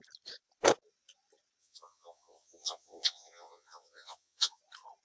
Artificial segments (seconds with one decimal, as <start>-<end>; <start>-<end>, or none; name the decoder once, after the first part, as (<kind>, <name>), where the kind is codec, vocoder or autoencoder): 1.6-4.6 (vocoder, Vocos)